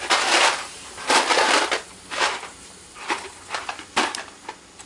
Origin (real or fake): fake